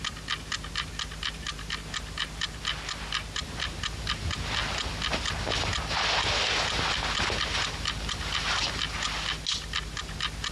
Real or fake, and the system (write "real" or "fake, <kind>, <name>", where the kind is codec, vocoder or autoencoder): real